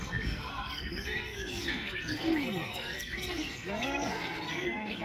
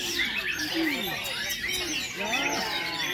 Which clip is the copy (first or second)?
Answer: first